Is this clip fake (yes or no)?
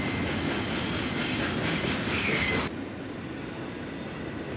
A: no